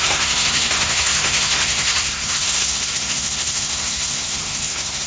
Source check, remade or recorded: remade